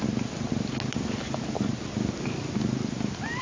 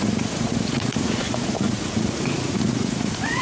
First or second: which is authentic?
first